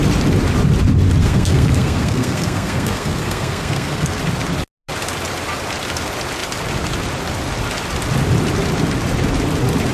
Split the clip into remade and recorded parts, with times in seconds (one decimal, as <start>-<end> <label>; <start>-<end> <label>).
0.0-1.2 recorded; 1.2-4.2 remade; 4.2-9.9 recorded